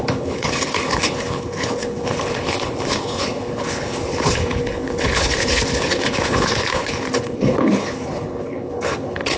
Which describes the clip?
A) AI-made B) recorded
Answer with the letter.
A